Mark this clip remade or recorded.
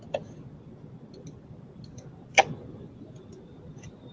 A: recorded